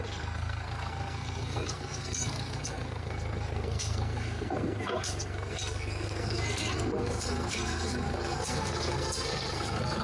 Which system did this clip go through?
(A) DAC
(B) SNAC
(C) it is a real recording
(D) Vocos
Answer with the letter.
B